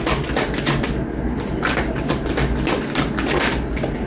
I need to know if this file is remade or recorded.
recorded